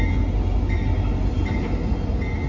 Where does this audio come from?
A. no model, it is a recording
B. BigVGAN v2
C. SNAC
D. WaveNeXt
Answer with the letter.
A